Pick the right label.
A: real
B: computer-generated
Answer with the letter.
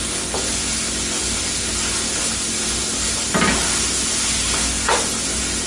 A